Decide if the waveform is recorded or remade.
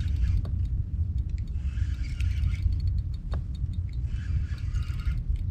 recorded